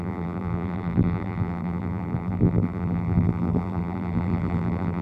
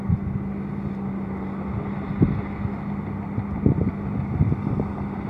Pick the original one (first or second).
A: second